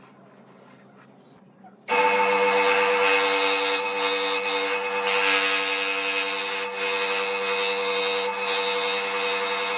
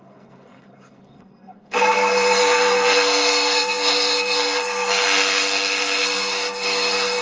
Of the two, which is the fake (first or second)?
second